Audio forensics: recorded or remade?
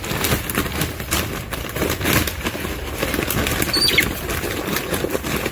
recorded